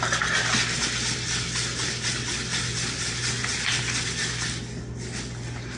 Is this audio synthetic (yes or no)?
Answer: no